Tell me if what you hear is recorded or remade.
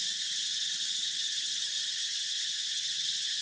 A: remade